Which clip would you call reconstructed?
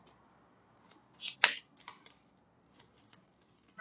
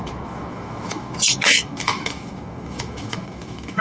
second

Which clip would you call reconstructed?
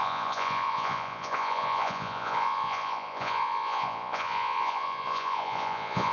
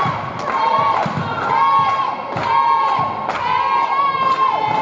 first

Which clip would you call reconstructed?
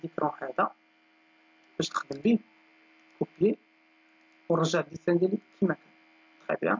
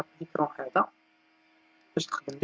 second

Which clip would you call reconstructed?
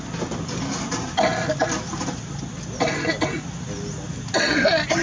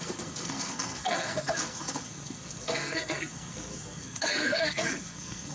second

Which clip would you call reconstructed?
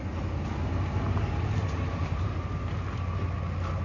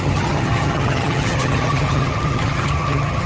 second